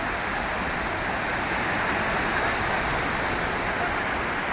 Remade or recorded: recorded